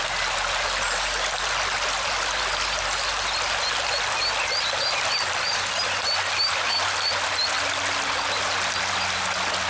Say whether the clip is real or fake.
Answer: real